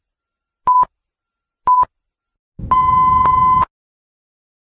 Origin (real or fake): real